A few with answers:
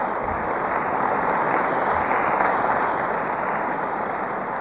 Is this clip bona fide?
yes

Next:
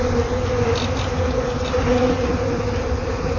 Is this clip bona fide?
yes